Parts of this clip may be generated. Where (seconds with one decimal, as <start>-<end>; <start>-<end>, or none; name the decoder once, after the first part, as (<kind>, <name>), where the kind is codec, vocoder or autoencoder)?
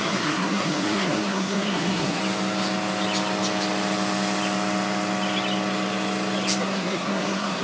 0.0-2.2 (codec, SNAC); 6.6-7.6